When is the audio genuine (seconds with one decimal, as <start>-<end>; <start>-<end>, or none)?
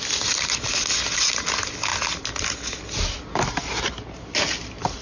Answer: 0.0-5.0